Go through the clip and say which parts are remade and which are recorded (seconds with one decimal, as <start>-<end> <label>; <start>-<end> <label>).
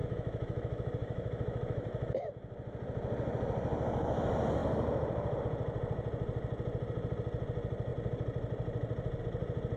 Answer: 0.0-2.3 remade; 2.3-9.8 recorded